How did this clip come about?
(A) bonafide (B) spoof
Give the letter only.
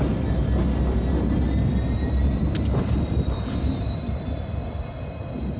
A